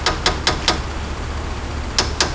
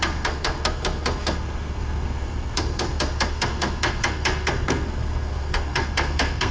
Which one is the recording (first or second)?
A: first